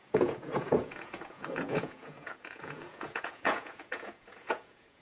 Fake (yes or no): yes